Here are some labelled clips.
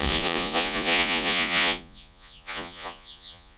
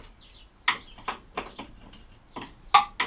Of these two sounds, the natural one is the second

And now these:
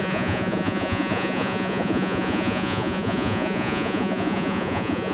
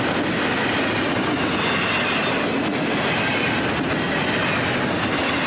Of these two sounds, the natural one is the second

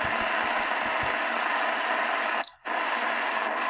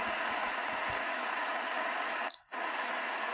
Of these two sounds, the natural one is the first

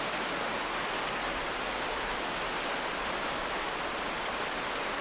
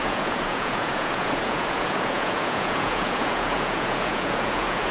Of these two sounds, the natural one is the first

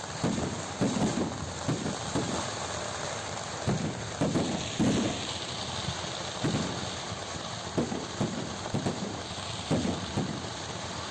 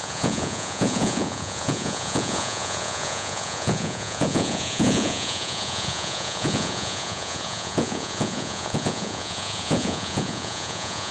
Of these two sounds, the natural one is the first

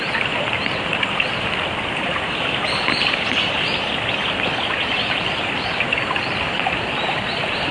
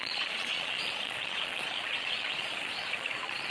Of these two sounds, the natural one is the first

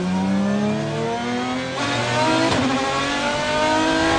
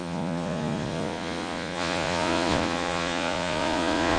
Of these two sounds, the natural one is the first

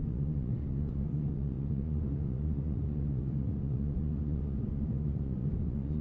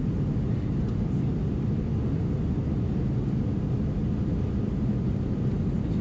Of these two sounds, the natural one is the second